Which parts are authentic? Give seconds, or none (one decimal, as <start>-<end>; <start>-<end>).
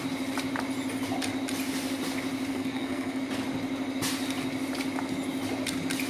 0.0-2.5; 3.2-6.1